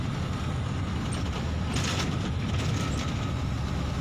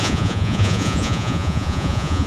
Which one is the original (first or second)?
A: first